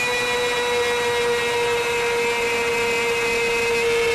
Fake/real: real